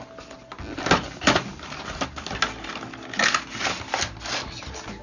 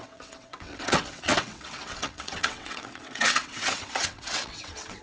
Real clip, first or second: first